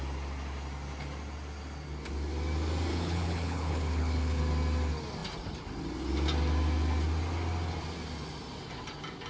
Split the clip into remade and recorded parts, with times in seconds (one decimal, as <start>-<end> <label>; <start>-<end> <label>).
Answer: 0.0-2.9 recorded; 2.9-4.4 remade; 4.4-9.3 recorded